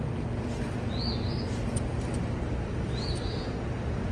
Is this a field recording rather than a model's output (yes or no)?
yes